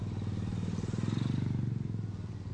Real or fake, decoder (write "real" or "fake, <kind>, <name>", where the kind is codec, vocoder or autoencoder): real